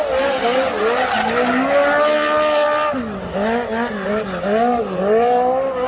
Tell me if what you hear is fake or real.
real